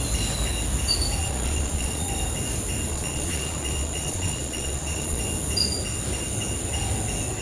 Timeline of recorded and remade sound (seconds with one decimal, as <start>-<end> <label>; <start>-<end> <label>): 0.0-1.2 recorded; 1.2-2.1 remade; 2.1-2.9 recorded; 2.9-5.2 remade; 5.2-7.4 recorded

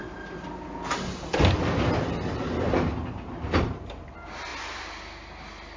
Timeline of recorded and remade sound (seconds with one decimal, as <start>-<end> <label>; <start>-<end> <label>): 0.0-5.8 recorded

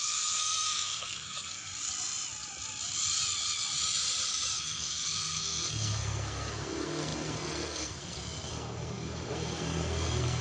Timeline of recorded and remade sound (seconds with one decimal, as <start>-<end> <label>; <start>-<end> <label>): 0.0-1.7 remade; 1.7-4.6 recorded; 4.6-10.4 remade

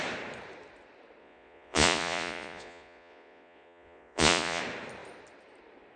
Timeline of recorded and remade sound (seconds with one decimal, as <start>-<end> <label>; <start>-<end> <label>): 0.0-1.2 recorded; 1.2-4.6 remade; 4.6-6.0 recorded